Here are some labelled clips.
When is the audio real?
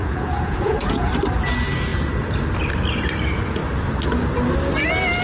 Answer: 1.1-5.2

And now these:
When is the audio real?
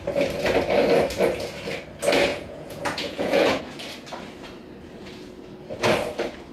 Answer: 0.0-2.3; 3.6-6.5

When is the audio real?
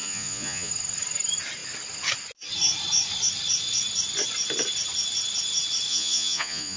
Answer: 0.7-5.9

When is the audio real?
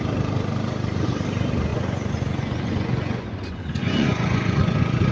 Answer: 0.0-1.7